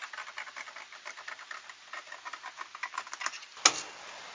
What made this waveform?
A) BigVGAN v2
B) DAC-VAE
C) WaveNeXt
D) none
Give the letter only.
D